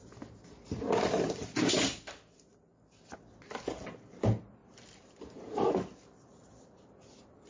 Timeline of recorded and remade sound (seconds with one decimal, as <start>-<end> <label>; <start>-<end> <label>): 0.0-7.5 remade